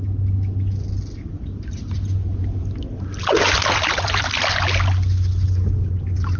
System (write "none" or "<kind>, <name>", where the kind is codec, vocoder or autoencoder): none